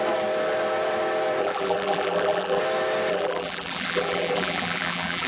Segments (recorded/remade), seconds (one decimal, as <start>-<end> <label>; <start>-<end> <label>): 0.0-1.4 recorded; 1.4-2.6 remade; 2.6-3.1 recorded; 3.1-5.3 remade